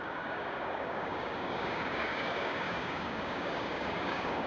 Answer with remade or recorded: remade